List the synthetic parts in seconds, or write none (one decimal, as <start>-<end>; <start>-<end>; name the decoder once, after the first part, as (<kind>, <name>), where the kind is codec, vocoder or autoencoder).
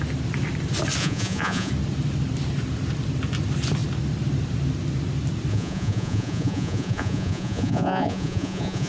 1.0-1.7 (vocoder, Vocos); 5.5-8.9